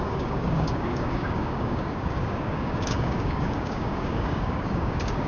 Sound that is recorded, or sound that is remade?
remade